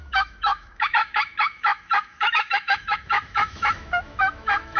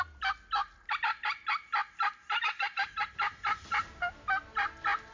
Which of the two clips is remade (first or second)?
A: first